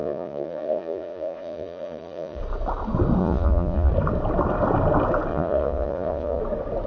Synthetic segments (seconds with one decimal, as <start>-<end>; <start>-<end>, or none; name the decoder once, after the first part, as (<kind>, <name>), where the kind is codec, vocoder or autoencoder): 0.0-2.4 (vocoder, Vocos); 3.2-3.9; 5.3-6.4